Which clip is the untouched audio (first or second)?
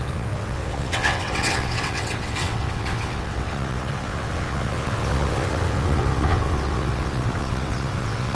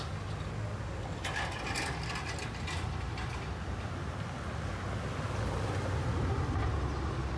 second